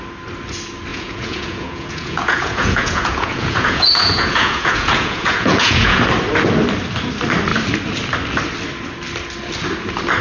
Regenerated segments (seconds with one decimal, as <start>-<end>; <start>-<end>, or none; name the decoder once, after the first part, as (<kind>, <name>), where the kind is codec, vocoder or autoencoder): 0.9-6.0 (vocoder, Vocos)